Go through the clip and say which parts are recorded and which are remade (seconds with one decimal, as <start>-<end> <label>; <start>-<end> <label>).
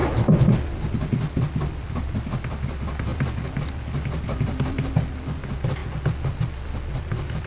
0.0-7.5 recorded